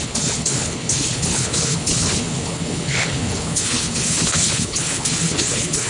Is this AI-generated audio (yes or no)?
yes